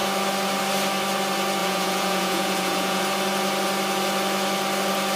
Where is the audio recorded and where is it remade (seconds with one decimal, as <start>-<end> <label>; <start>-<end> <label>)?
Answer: 0.0-1.6 recorded; 1.6-3.0 remade; 3.0-5.2 recorded